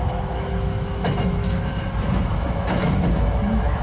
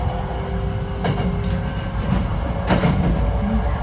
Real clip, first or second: second